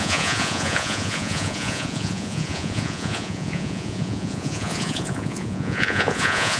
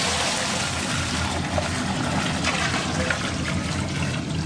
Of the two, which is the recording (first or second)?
second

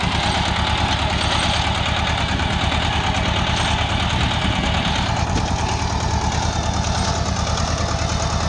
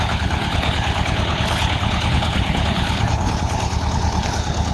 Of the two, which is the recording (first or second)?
first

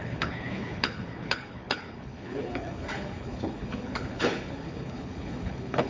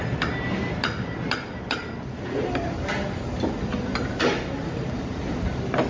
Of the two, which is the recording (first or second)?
second